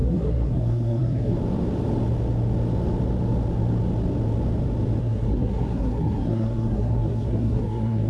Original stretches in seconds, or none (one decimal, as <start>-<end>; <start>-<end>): 1.3-5.0

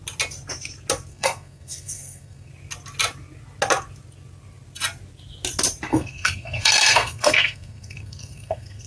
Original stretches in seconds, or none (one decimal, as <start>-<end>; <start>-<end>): 0.0-1.1; 2.5-5.9

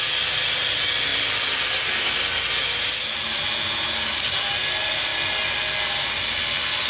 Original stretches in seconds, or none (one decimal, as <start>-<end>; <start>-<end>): 0.0-6.9

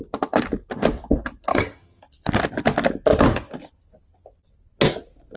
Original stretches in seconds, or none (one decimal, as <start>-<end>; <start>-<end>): 0.0-1.5; 2.0-5.4

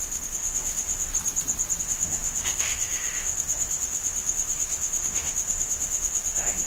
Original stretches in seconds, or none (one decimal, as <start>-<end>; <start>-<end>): 1.1-1.8

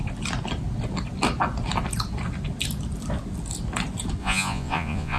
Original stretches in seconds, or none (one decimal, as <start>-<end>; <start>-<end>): 0.0-4.2

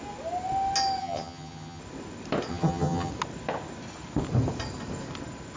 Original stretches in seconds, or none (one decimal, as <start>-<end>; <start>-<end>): 0.0-1.0; 1.8-2.5; 3.1-5.6